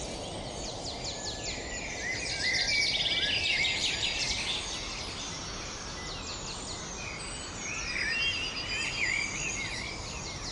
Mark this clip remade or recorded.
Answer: recorded